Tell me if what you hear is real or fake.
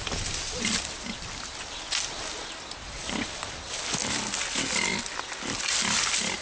real